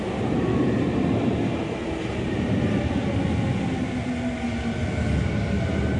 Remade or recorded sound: recorded